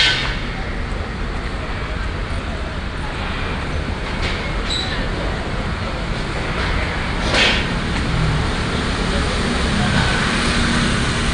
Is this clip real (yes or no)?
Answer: yes